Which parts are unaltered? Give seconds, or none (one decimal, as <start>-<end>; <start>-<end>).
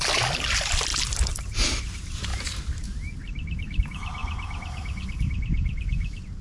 0.0-2.3; 3.8-6.4